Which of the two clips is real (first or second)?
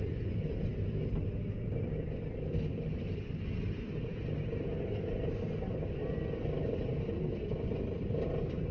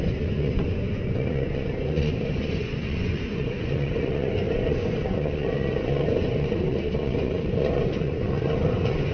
first